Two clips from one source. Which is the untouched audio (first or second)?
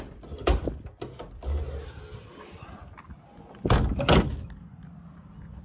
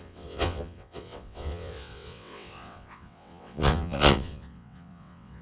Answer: first